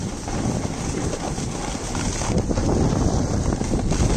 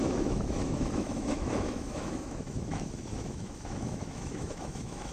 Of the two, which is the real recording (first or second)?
first